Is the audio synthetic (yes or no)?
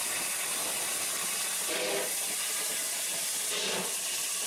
no